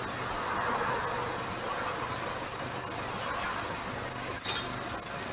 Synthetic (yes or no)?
no